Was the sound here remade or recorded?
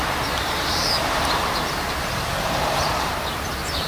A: remade